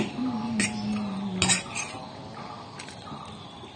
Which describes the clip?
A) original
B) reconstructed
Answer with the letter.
A